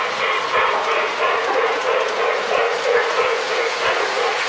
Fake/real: fake